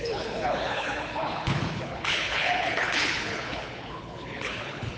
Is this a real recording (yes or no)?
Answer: no